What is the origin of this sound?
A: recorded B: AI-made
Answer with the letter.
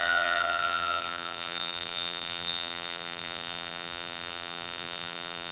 B